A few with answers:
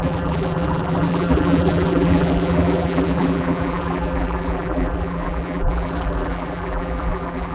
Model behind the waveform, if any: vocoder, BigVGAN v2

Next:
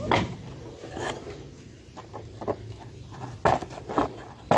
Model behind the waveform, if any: none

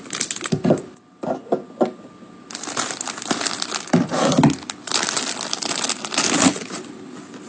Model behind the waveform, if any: none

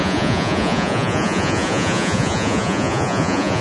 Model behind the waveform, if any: vocoder, Vocos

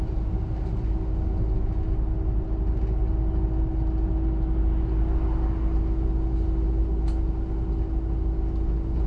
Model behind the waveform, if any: none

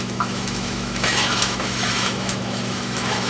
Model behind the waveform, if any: autoencoder, DAC-VAE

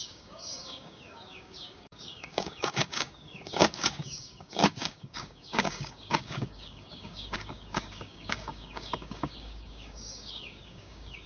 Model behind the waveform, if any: codec, DAC